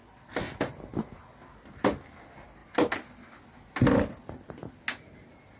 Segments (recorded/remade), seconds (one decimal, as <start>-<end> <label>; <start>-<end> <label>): 0.0-5.6 recorded